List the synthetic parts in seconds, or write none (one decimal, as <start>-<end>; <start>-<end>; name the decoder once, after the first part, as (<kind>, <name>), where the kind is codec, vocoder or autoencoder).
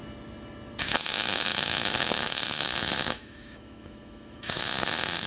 0.8-5.3 (autoencoder, DAC-VAE)